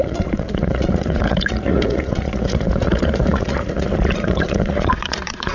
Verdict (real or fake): fake